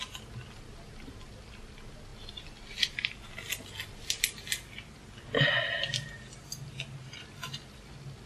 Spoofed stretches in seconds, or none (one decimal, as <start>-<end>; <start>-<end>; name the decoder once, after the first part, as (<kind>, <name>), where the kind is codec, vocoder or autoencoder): none